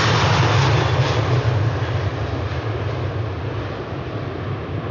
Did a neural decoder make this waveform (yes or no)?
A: no